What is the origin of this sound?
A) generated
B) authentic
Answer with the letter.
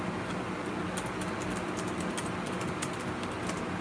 B